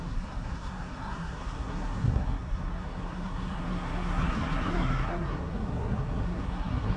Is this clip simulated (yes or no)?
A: yes